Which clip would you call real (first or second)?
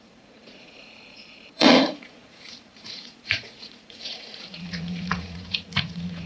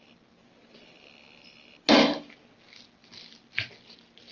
second